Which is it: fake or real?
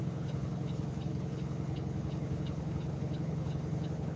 fake